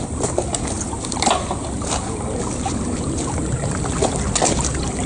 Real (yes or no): yes